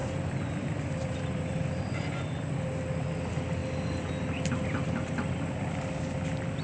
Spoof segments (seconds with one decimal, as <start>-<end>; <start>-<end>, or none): 0.0-2.1